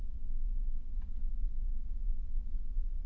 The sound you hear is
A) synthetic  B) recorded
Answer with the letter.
A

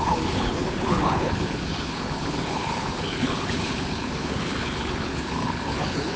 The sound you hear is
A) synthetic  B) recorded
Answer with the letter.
A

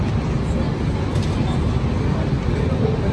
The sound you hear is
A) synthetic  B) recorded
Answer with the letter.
B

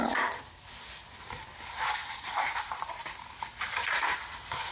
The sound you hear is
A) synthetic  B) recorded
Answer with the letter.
B